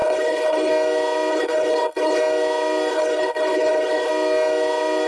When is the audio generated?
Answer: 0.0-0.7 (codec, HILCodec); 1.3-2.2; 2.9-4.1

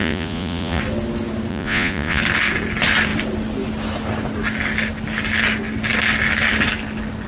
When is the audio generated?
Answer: 0.0-0.8 (vocoder, Vocos); 1.5-2.2